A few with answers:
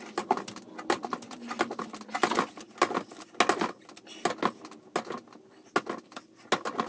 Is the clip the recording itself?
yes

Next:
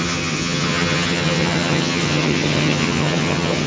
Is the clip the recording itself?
no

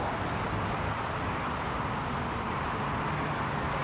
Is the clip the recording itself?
yes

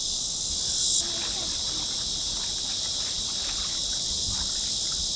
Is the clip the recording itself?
yes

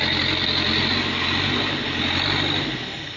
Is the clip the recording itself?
yes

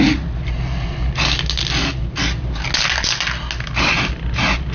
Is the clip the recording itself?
yes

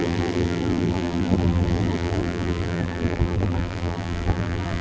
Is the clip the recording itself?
no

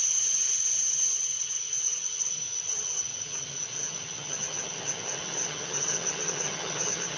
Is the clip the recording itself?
no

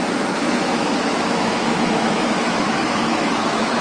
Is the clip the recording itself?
no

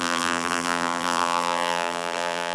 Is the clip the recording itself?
no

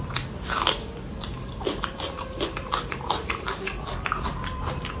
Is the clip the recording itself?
no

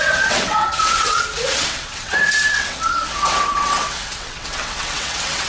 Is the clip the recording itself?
no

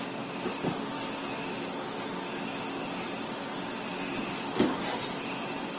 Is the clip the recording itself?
yes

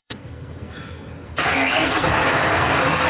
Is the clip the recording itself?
no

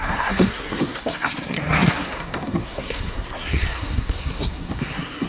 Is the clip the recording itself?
no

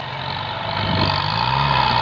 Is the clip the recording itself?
yes